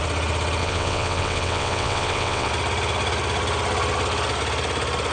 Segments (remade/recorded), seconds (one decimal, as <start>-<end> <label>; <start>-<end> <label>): 0.0-0.6 recorded; 0.6-2.5 remade; 2.5-5.1 recorded